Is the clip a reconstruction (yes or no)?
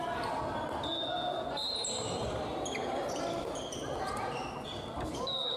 no